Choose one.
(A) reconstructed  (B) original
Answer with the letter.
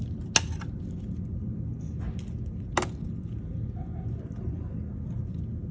B